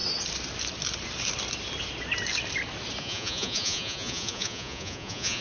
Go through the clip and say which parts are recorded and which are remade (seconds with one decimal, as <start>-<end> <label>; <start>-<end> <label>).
0.0-3.0 recorded; 3.0-5.4 remade

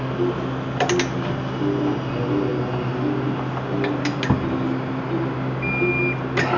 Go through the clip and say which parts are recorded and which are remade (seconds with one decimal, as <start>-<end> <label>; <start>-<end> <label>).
0.0-6.6 recorded

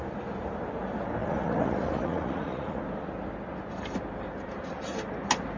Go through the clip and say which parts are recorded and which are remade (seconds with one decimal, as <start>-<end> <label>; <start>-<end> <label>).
0.0-1.2 recorded; 1.2-2.8 remade; 2.8-5.6 recorded

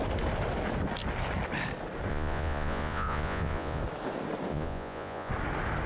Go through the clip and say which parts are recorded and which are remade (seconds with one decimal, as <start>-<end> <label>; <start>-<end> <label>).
0.0-2.1 recorded; 2.1-3.8 remade; 3.8-4.5 recorded; 4.5-5.3 remade; 5.3-5.9 recorded

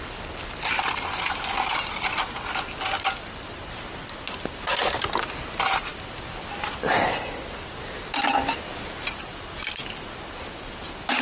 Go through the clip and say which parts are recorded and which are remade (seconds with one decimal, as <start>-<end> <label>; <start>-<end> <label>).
0.0-11.2 recorded

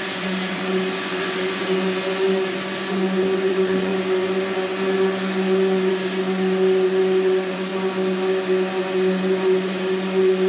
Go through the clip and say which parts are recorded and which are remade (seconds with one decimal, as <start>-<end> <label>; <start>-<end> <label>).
0.0-1.6 remade; 1.6-3.5 recorded; 3.5-3.9 remade; 3.9-5.9 recorded; 5.9-7.7 remade; 7.7-8.8 recorded; 8.8-10.5 remade

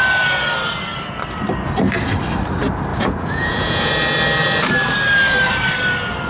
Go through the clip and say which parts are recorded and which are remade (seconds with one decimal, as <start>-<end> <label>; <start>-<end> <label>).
0.0-2.9 recorded; 2.9-3.9 remade; 3.9-6.3 recorded